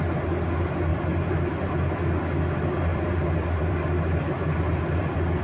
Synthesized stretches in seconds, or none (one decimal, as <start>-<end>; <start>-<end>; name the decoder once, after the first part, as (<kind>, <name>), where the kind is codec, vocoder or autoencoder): 0.9-1.6 (vocoder, BigVGAN v2); 2.9-5.4